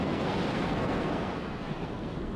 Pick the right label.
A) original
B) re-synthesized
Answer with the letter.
B